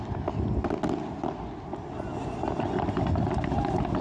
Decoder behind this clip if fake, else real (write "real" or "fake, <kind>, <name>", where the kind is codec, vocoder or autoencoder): real